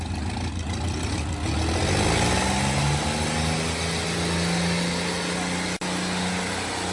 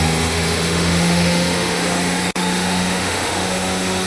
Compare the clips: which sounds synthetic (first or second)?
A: second